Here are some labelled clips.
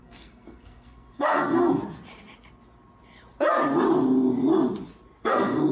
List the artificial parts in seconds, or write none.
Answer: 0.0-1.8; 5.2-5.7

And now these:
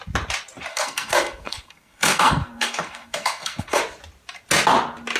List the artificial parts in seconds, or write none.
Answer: 0.7-3.8

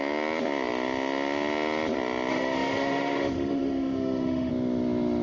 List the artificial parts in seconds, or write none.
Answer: 2.3-4.5

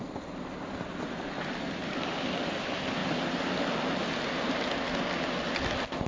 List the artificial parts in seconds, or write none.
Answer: 0.0-3.0

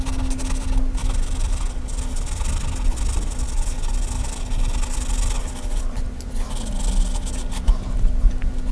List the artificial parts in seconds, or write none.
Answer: none

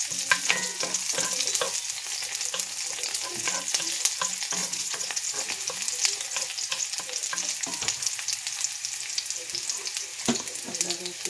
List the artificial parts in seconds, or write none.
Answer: 4.6-5.2

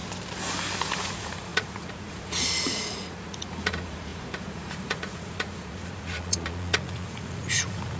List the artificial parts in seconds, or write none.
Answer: 0.8-8.0

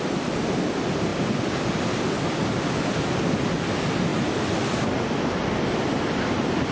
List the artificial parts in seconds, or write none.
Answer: none